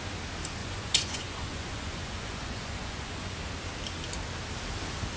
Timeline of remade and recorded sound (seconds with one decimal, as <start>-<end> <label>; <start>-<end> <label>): 0.0-0.6 recorded; 0.6-3.4 remade; 3.4-5.2 recorded